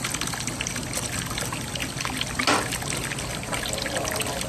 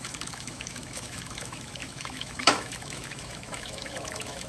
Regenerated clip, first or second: second